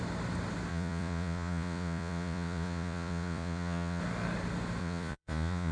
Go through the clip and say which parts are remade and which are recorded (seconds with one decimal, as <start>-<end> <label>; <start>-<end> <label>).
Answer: 0.0-0.7 recorded; 0.7-4.0 remade; 4.0-4.8 recorded; 4.8-5.7 remade